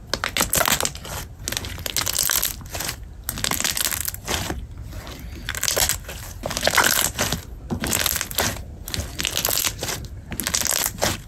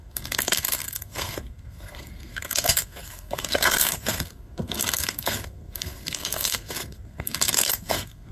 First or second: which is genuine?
first